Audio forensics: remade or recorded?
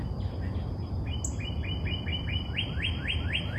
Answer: recorded